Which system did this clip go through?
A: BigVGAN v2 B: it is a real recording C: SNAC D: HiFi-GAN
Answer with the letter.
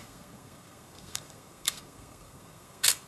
C